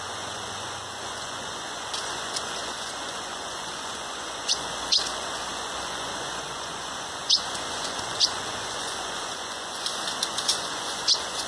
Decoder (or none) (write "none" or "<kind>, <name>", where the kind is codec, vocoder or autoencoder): vocoder, Vocos